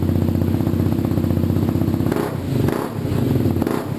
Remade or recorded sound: recorded